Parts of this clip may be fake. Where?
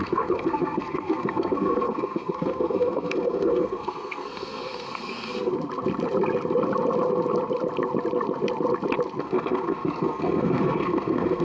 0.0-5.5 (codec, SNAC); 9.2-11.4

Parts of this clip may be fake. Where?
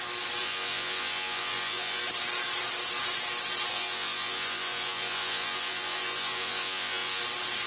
0.4-2.0 (vocoder, Vocos); 3.7-7.2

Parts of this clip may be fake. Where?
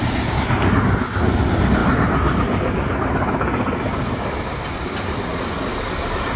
none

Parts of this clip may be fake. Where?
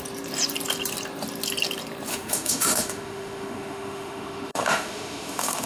2.1-5.7 (autoencoder, DAC-VAE)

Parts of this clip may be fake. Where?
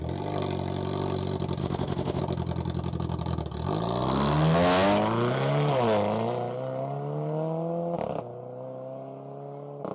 1.6-2.2 (autoencoder, DAC-VAE)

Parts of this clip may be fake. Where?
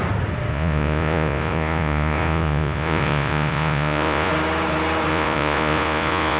0.5-4.3 (vocoder, Vocos); 5.1-6.4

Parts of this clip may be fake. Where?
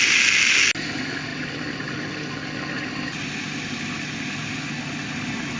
none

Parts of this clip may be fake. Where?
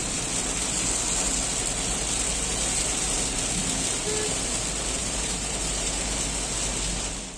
5.0-6.2 (vocoder, BigVGAN v2)